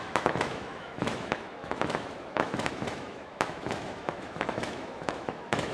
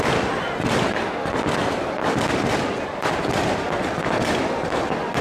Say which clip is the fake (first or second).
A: first